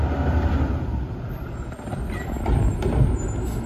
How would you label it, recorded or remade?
recorded